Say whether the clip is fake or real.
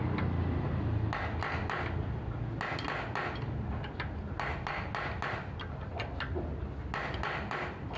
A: real